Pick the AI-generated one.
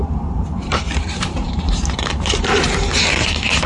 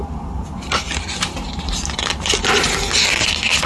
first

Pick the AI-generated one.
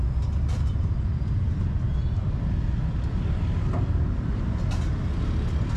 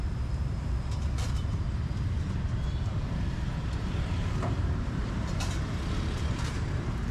second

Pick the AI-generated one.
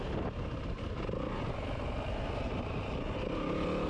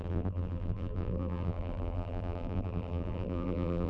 second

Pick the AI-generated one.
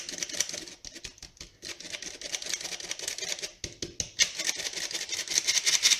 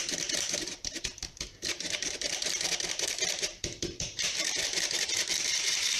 second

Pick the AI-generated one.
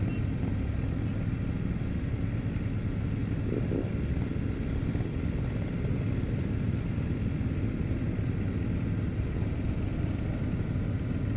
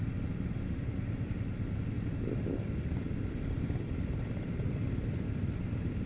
second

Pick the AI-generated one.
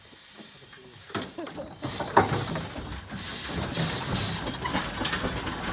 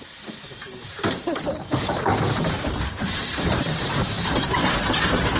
second